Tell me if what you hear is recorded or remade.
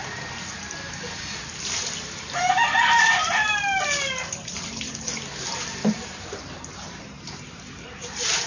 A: remade